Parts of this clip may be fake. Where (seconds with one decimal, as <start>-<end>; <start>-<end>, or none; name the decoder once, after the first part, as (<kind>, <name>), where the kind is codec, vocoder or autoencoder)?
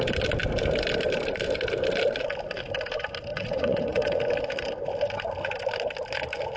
3.3-4.2 (vocoder, Vocos)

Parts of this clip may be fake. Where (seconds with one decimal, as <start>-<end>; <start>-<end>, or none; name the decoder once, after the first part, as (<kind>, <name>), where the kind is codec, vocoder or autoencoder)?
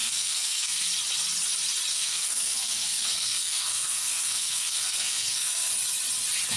0.0-0.9 (codec, SNAC); 1.9-5.7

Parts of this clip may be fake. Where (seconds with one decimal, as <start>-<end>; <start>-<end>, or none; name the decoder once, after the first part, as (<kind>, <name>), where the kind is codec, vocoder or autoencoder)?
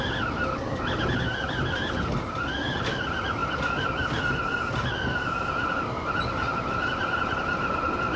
none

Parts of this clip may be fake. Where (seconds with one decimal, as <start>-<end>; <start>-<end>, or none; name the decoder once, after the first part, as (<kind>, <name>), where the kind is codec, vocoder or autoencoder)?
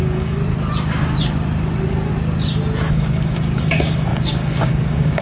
0.0-0.4 (codec, DAC); 2.9-5.2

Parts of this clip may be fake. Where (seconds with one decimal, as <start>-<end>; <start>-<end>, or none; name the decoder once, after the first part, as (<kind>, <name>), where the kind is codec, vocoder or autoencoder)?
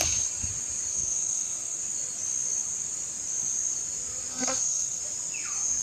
0.9-1.8 (codec, SNAC); 4.3-5.0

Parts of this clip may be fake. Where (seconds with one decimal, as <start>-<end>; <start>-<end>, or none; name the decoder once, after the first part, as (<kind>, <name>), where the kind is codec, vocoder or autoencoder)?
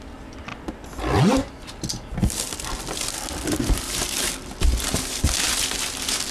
0.0-0.5 (vocoder, BigVGAN v2); 4.3-6.3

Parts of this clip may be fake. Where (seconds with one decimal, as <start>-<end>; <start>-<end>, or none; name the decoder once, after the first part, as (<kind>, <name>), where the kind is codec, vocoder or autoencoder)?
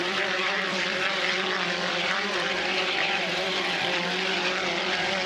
0.0-1.5 (vocoder, BigVGAN v2); 1.9-3.6